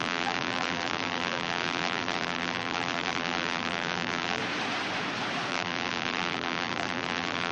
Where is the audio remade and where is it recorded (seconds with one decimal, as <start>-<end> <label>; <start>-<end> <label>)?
0.0-4.4 remade; 4.4-5.5 recorded; 5.5-7.5 remade